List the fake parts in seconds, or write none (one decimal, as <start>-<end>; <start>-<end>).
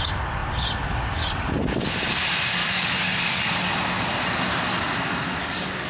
2.6-3.7; 5.4-5.9